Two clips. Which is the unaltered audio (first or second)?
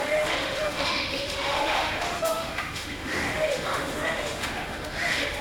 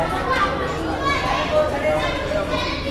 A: second